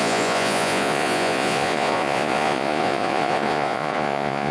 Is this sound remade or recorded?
remade